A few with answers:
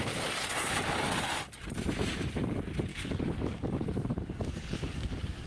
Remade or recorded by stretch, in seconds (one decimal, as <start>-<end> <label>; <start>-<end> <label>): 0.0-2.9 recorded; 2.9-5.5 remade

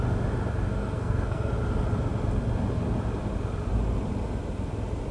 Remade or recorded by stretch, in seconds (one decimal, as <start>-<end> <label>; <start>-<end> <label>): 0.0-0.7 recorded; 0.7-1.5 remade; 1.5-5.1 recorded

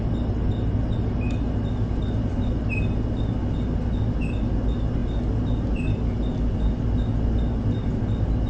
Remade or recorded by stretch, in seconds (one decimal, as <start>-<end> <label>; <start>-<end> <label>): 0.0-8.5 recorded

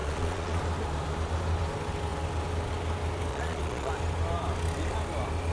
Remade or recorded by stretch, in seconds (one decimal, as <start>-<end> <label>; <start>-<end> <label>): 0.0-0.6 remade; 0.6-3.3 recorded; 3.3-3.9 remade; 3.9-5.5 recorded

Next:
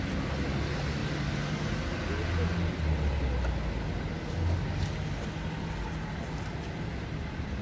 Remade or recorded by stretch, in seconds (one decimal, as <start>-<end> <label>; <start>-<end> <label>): 0.0-7.6 recorded